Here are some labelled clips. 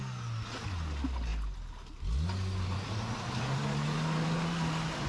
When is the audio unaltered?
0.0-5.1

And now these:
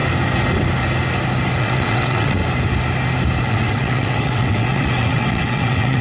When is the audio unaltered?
0.0-1.6; 2.4-3.4

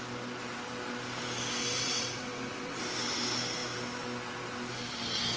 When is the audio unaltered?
0.0-1.6; 2.8-5.4